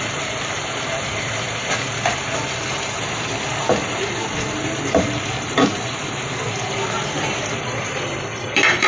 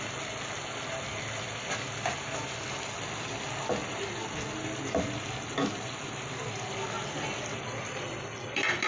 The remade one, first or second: first